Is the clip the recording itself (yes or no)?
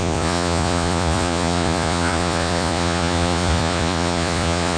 no